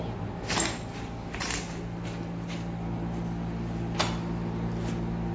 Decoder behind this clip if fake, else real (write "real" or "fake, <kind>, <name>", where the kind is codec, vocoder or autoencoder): real